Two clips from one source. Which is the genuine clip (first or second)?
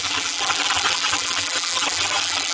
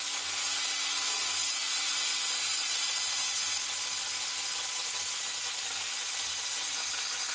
second